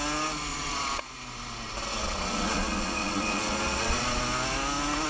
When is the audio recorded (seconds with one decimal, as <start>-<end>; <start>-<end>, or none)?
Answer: 0.0-0.5; 1.0-2.0; 4.2-5.1